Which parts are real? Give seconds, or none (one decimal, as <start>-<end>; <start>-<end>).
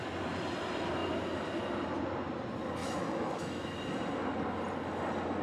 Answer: 0.0-2.8; 3.7-5.4